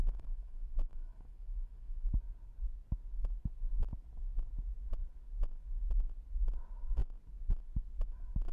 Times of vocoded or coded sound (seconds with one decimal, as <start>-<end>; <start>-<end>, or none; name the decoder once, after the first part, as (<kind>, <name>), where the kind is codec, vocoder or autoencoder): 0.0-2.2 (autoencoder, DAC-VAE)